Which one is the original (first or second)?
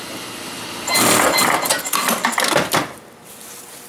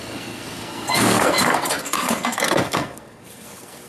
first